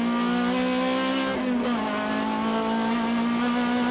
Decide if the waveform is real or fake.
real